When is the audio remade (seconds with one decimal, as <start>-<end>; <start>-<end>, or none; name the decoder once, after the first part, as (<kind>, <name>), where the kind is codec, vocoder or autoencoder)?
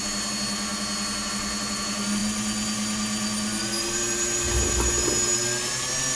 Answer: none